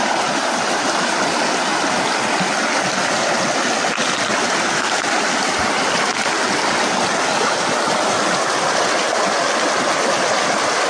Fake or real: real